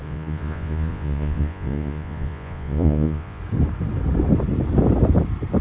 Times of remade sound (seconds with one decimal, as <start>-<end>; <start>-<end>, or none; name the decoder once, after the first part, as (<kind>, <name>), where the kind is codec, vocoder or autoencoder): 0.0-3.4 (vocoder, Vocos)